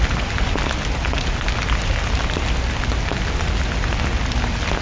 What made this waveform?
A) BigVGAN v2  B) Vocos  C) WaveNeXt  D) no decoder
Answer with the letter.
D